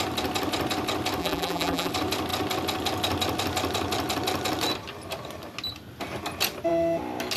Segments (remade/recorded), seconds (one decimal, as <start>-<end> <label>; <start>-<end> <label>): 0.0-1.2 recorded; 1.2-1.9 remade; 1.9-7.4 recorded